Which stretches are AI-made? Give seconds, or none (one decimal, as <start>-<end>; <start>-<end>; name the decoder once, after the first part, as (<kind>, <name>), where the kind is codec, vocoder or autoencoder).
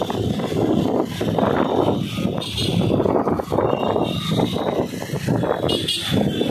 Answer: none